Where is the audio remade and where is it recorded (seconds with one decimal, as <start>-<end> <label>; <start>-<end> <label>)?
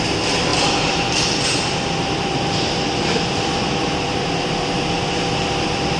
0.0-0.5 recorded; 0.5-4.1 remade; 4.1-6.0 recorded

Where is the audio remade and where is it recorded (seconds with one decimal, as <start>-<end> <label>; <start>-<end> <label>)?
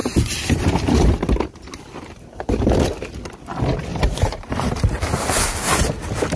0.0-3.9 recorded; 3.9-5.8 remade; 5.8-6.4 recorded